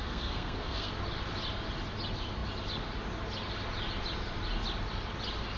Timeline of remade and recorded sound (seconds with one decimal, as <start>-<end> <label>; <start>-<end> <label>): 0.0-0.9 remade; 0.9-5.6 recorded